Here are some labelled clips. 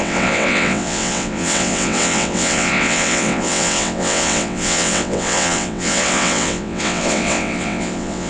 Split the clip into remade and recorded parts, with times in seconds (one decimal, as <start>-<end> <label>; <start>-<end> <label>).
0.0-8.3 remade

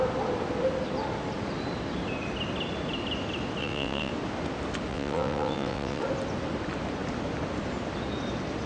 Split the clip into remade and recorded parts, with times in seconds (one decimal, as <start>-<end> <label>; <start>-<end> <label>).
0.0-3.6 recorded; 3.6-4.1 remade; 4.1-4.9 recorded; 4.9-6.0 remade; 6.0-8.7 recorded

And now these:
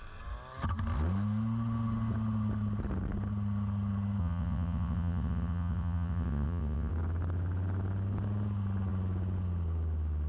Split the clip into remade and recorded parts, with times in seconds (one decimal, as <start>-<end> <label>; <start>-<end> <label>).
0.0-4.2 recorded; 4.2-6.9 remade; 6.9-10.3 recorded

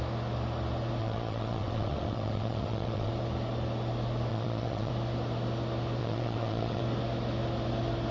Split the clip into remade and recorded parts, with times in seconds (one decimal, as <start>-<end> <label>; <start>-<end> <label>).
0.0-1.0 recorded; 1.0-3.1 remade; 3.1-4.3 recorded; 4.3-4.9 remade; 4.9-6.0 recorded; 6.0-6.8 remade; 6.8-8.1 recorded

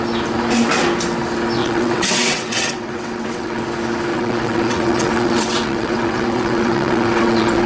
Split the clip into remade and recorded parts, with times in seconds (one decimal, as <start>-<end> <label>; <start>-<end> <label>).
0.0-1.6 recorded; 1.6-3.6 remade; 3.6-4.1 recorded; 4.1-7.7 remade

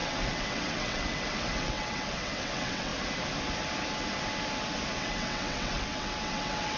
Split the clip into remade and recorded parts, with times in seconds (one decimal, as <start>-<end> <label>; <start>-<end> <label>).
0.0-2.9 remade; 2.9-5.0 recorded; 5.0-6.8 remade

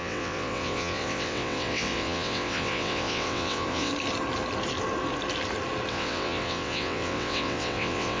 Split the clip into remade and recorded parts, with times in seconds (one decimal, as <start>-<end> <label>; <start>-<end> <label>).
0.0-3.9 remade; 3.9-5.9 recorded; 5.9-8.2 remade